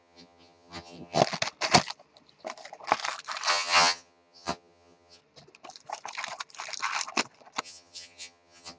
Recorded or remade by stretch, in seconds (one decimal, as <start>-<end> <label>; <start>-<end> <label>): 0.0-1.2 remade; 1.2-3.5 recorded; 3.5-5.2 remade; 5.2-7.6 recorded; 7.6-8.8 remade